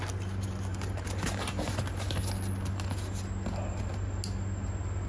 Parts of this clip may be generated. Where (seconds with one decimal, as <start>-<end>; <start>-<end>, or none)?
none